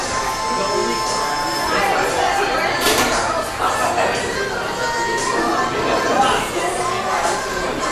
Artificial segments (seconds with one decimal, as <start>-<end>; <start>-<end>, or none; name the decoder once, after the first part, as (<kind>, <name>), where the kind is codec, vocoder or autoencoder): 6.1-6.8 (vocoder, BigVGAN v2)